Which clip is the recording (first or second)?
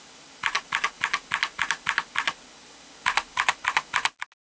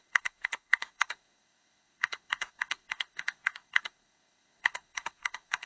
first